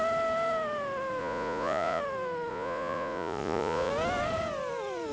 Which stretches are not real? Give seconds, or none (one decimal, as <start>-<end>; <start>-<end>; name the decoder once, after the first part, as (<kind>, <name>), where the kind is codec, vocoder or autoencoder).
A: 1.2-2.0 (vocoder, Vocos); 2.5-3.9